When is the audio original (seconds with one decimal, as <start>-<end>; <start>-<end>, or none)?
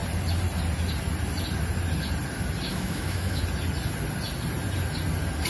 0.0-2.7; 3.4-5.5